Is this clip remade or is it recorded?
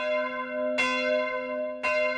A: recorded